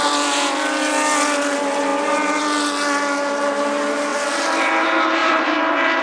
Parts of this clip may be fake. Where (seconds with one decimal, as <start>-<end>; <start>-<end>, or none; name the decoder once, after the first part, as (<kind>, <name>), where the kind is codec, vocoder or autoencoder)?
4.1-4.6 (vocoder, BigVGAN v2); 5.2-6.0

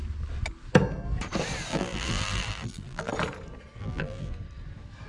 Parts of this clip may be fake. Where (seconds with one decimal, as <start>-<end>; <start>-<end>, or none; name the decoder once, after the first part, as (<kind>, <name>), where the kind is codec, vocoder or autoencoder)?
1.7-3.1 (vocoder, BigVGAN v2); 3.8-4.3

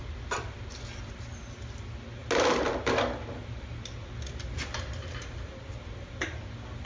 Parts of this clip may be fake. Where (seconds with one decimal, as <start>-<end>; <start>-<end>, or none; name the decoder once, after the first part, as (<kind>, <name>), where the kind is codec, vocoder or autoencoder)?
none

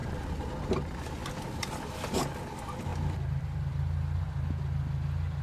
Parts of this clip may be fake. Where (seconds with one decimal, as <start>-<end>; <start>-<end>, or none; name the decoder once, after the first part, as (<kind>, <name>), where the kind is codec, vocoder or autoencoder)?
none

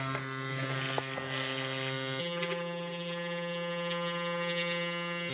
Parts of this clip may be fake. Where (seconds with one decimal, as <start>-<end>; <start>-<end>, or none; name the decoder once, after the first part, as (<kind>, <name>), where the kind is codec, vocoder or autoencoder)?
2.2-5.3 (vocoder, BigVGAN v2)

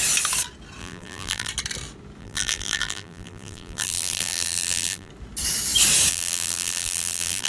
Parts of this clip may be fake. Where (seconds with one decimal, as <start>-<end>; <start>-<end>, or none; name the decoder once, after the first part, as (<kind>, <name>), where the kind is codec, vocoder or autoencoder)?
0.8-1.5 (vocoder, BigVGAN v2); 2.2-5.1; 6.1-7.5